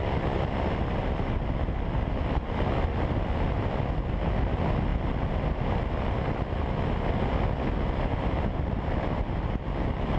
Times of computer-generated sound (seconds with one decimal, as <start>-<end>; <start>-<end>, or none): none